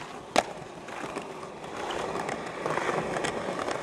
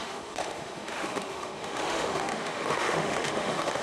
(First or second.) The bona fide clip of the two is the first